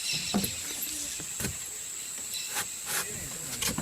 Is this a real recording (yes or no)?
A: yes